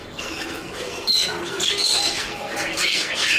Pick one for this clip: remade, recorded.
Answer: remade